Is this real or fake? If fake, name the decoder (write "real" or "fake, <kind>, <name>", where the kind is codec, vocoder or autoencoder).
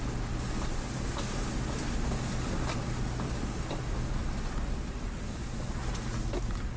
real